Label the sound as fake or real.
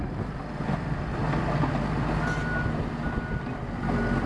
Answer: real